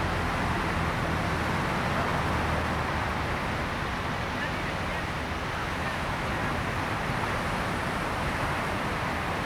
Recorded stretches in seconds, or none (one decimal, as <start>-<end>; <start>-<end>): 0.0-5.6; 6.2-9.4